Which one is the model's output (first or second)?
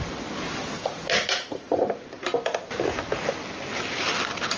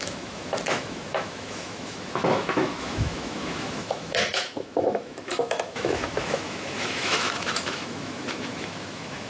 second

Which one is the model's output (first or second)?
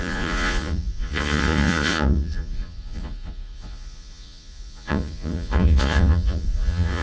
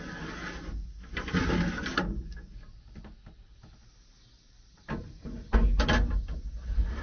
first